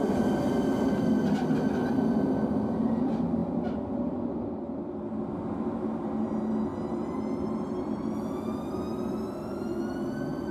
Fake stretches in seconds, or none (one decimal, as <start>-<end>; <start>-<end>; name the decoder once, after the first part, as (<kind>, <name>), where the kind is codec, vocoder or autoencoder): none